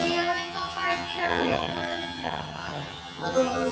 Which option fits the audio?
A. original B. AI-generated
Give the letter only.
B